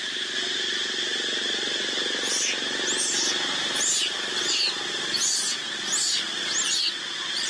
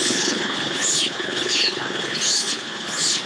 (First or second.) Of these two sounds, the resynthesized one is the second